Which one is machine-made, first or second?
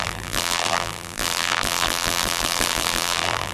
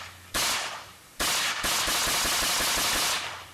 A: first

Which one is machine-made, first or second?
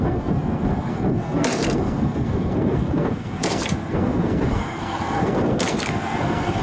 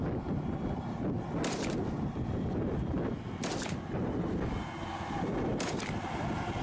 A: first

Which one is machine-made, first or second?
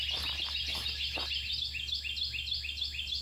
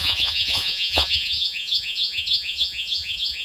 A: second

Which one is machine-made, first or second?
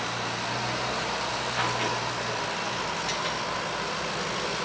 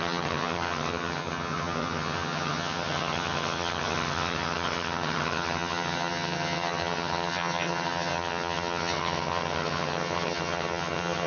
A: second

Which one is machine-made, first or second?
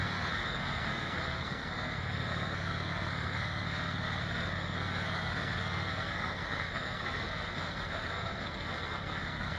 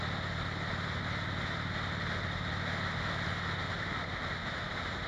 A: first